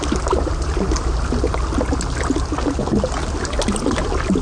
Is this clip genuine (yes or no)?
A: yes